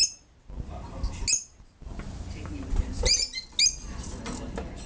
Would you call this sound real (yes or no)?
yes